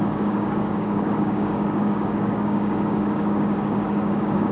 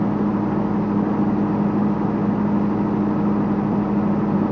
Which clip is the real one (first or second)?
second